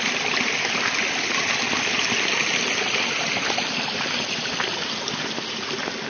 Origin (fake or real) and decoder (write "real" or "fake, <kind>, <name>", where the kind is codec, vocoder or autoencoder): real